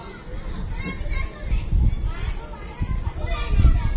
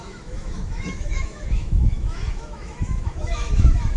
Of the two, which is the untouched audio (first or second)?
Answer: first